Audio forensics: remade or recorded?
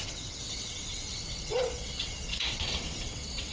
remade